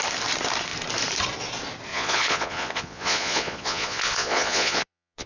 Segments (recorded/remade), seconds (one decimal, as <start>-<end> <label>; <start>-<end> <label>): 0.0-1.9 recorded; 1.9-5.3 remade